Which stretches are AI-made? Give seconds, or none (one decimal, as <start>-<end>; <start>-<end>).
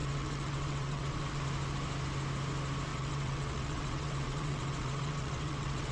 0.0-1.4; 2.9-5.9